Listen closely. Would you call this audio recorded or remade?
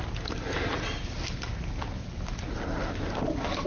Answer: recorded